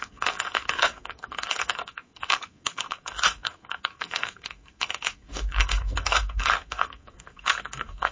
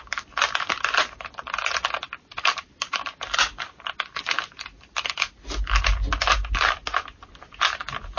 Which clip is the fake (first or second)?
first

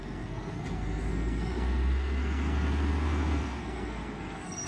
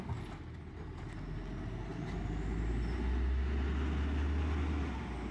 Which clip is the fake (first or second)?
first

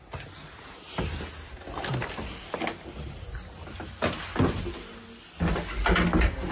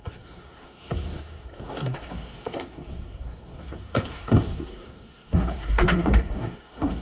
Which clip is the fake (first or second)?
second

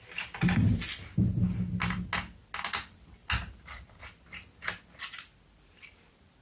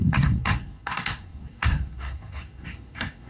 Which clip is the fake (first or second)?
second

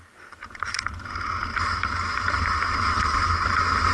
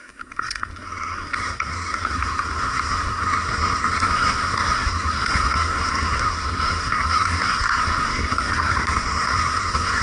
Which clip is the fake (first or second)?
second